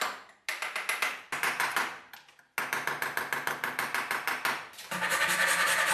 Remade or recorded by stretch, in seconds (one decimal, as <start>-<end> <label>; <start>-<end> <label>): 0.0-5.9 recorded